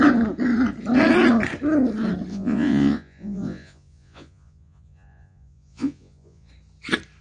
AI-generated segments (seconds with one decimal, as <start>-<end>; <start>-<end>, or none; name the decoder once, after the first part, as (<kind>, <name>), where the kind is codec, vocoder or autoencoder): 2.3-6.5 (vocoder, Vocos)